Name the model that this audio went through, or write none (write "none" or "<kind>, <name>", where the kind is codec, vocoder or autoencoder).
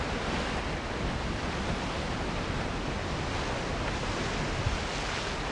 none